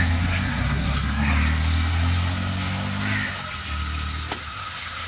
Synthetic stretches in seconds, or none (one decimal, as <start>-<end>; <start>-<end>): 0.0-1.3; 4.4-5.1